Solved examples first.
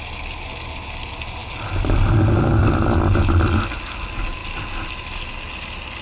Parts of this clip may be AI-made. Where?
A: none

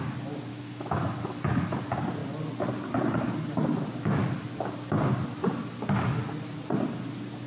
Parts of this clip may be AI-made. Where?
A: 0.5-1.4

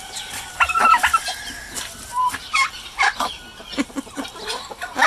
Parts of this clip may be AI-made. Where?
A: none

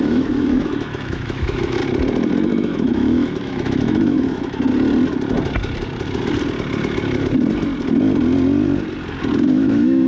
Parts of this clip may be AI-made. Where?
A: 0.0-1.8; 2.5-4.7; 9.5-10.1

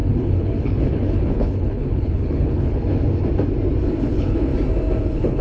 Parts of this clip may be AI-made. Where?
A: 0.0-2.8; 4.0-4.5; 5.0-5.4

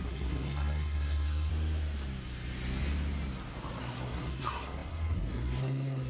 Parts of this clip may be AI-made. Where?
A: 0.0-1.5; 3.8-6.1

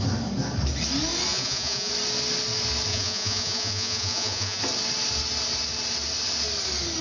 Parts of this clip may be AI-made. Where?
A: 1.3-1.9; 2.9-4.6

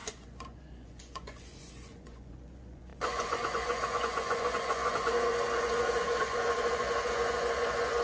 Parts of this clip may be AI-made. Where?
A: 0.0-8.0